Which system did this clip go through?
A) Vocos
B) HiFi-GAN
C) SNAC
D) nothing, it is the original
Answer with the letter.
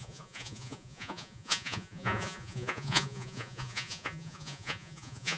A